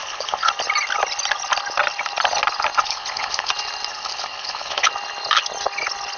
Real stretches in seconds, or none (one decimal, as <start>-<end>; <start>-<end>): 0.5-2.8; 3.5-3.9; 4.9-6.2